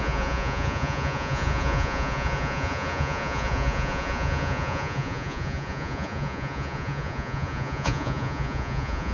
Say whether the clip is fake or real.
fake